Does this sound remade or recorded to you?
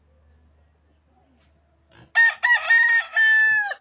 recorded